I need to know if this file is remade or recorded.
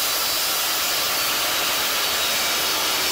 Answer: remade